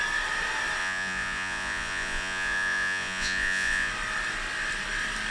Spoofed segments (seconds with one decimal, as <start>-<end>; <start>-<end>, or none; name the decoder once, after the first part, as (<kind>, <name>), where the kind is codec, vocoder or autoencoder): 0.8-3.9 (vocoder, Vocos)

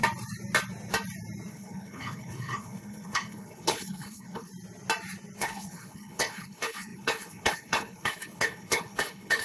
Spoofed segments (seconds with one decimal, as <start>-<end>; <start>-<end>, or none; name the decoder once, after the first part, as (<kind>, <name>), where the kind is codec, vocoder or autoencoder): 1.5-4.5 (codec, HILCodec); 5.4-9.4

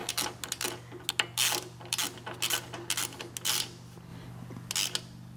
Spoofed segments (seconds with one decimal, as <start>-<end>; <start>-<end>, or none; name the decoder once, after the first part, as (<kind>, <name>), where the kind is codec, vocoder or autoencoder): none

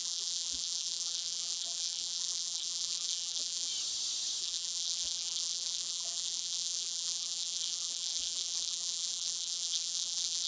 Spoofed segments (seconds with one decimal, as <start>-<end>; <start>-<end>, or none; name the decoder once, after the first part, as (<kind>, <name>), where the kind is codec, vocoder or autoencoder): 0.0-3.7 (vocoder, BigVGAN v2); 4.4-10.5